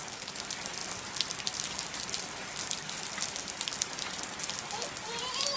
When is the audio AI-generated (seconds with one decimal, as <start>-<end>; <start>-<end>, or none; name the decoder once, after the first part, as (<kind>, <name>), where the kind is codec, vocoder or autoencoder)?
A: none